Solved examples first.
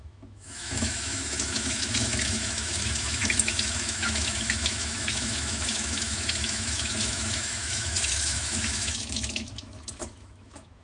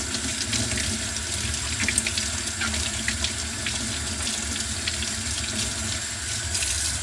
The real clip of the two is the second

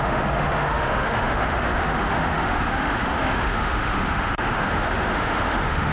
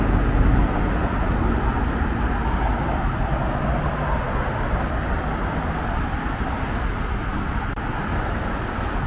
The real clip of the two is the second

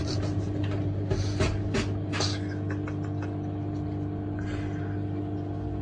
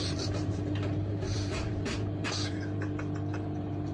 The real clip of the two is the first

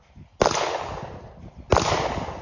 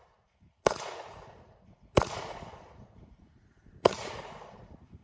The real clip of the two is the first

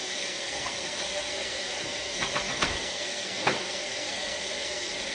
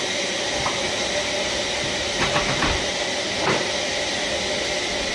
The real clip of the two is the second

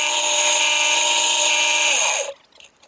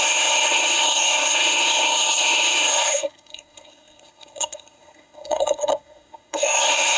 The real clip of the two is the first